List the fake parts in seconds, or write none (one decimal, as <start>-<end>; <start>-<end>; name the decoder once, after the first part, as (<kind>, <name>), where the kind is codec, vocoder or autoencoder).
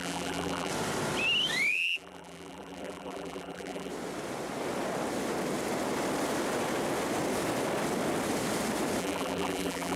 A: 0.0-0.7 (vocoder, BigVGAN v2); 1.7-3.9; 9.0-10.0